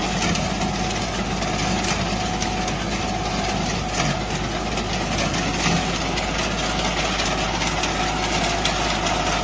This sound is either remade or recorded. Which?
recorded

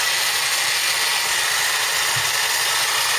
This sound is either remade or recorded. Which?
recorded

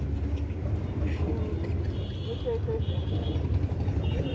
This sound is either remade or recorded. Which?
recorded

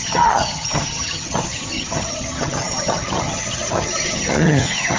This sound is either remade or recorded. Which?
remade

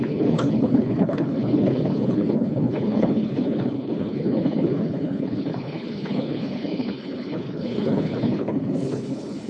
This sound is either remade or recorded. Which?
remade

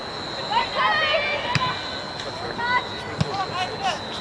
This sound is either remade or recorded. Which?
recorded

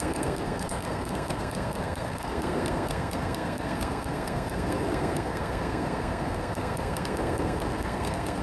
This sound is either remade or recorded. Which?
remade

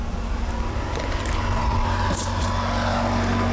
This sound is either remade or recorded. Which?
recorded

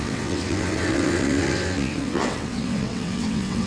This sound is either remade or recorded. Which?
remade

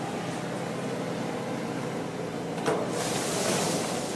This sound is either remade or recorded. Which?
recorded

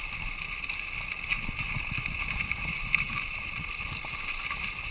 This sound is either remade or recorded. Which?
recorded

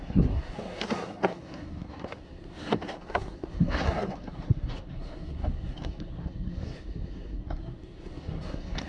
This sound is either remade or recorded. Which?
remade